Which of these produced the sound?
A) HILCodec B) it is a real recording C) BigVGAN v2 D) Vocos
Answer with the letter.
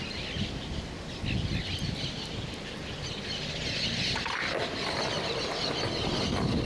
B